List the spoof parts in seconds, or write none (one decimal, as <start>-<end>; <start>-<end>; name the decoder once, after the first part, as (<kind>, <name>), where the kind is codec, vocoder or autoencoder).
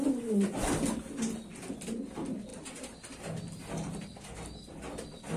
none